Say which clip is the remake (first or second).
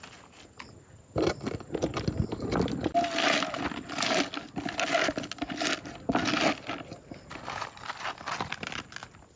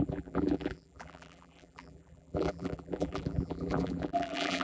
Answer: second